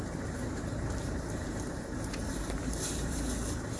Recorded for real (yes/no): no